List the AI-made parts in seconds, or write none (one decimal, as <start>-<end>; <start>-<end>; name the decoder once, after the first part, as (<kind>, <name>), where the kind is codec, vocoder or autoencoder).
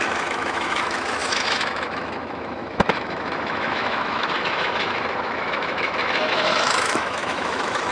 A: 0.0-7.9 (autoencoder, DAC-VAE)